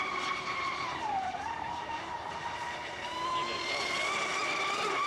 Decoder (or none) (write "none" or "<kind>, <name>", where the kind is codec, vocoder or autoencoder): vocoder, BigVGAN v2